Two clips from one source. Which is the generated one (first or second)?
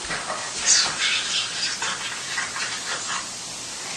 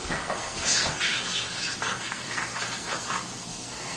second